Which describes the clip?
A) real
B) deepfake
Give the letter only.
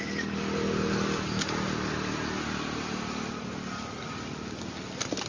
A